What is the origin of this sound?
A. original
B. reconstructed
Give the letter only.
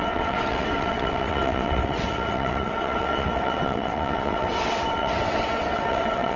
B